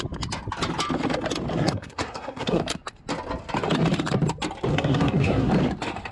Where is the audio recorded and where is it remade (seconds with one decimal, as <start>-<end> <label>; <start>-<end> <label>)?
0.0-1.5 recorded; 1.5-2.6 remade; 2.6-4.7 recorded; 4.7-5.5 remade; 5.5-6.1 recorded